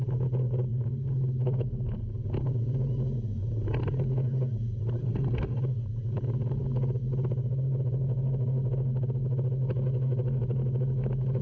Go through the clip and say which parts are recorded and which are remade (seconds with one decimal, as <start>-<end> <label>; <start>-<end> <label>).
0.0-5.0 recorded; 5.0-5.6 remade; 5.6-11.4 recorded